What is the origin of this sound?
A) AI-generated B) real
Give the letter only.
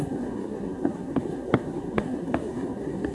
A